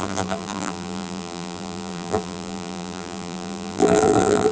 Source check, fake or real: fake